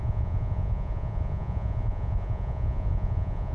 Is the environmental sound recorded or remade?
remade